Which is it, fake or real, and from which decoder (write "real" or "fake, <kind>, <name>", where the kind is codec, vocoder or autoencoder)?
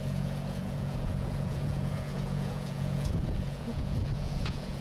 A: fake, vocoder, Vocos